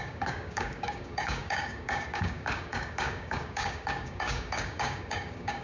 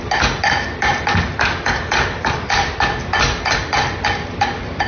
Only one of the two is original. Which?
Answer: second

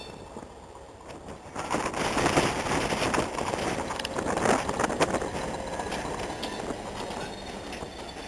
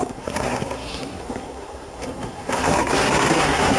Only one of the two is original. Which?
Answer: first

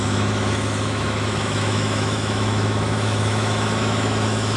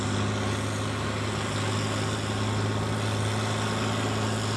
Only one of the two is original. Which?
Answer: second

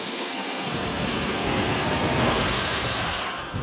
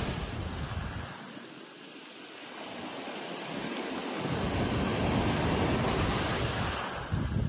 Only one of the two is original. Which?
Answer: second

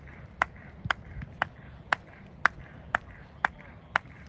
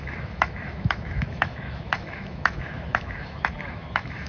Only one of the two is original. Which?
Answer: first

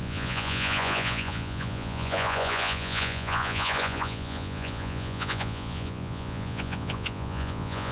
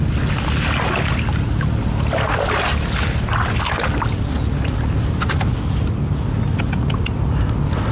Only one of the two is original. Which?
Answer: second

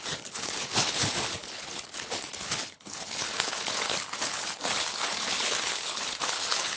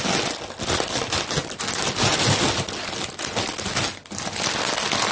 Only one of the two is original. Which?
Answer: second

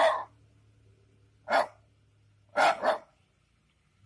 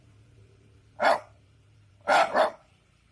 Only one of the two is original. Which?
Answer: first